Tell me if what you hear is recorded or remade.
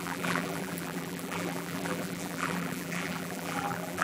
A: remade